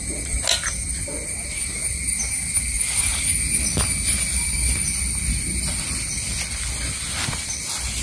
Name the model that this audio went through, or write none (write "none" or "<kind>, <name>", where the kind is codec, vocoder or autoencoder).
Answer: none